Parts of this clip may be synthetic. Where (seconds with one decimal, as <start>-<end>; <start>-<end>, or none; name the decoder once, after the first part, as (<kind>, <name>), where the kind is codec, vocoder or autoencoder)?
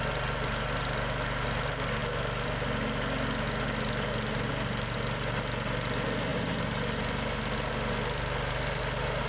none